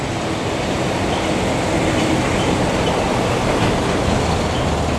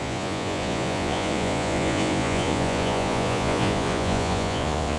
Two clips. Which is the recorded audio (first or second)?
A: first